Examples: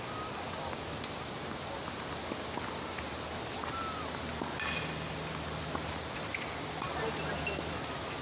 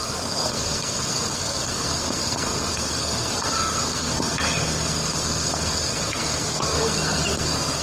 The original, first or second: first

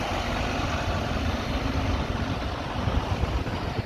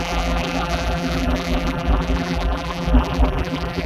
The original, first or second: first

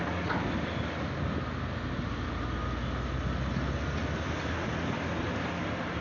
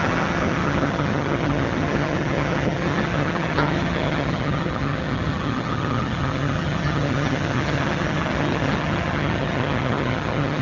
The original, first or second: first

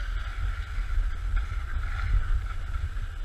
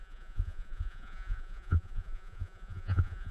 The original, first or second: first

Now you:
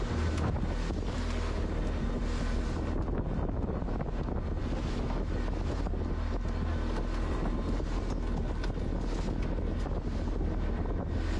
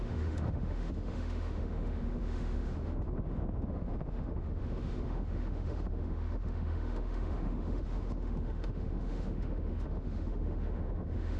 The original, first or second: first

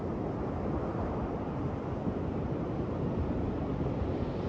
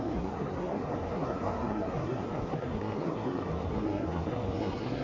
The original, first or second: first